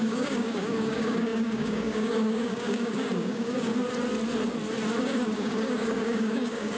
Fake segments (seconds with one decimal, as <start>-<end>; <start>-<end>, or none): 0.0-3.7; 5.0-6.8